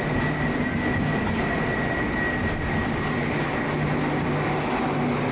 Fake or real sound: real